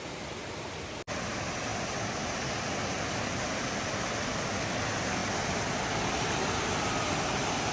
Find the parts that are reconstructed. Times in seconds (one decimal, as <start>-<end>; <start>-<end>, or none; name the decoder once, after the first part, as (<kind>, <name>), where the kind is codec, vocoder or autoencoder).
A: none